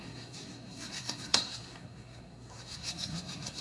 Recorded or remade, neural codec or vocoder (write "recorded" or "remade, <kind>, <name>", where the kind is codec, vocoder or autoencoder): remade, codec, SNAC